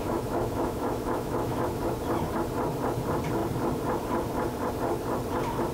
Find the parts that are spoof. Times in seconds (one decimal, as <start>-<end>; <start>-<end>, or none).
0.0-1.8